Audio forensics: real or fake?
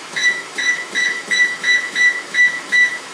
fake